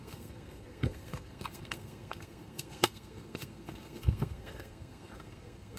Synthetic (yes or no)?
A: yes